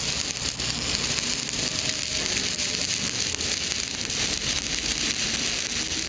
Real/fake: real